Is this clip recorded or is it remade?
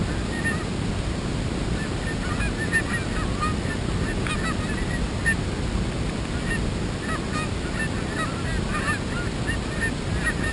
recorded